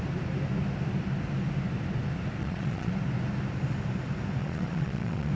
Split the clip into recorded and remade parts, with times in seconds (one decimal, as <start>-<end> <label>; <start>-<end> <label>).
0.0-2.4 recorded; 2.4-2.9 remade; 2.9-4.4 recorded; 4.4-5.3 remade